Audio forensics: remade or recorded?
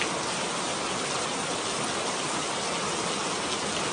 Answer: recorded